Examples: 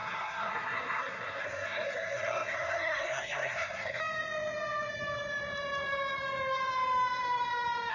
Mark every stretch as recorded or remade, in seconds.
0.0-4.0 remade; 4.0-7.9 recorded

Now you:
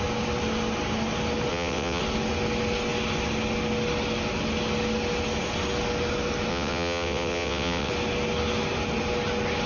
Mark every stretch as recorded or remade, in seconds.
0.0-1.5 recorded; 1.5-2.0 remade; 2.0-6.5 recorded; 6.5-7.9 remade; 7.9-9.7 recorded

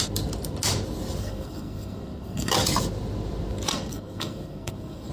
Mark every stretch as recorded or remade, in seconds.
0.0-1.2 recorded; 1.2-2.5 remade; 2.5-3.7 recorded; 3.7-5.1 remade

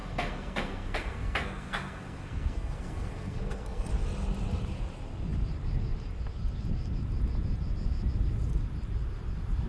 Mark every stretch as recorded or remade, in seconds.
0.0-3.9 remade; 3.9-9.7 recorded

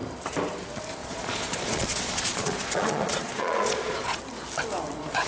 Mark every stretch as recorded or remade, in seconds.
0.0-1.0 recorded; 1.0-4.2 remade; 4.2-5.3 recorded

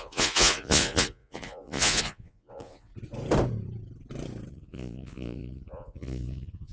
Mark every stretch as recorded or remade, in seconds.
0.0-2.9 remade; 2.9-4.5 recorded; 4.5-6.7 remade